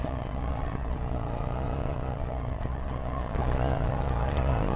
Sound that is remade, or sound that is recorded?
remade